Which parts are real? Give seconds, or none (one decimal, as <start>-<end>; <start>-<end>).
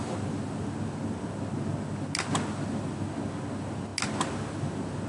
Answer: 0.0-5.1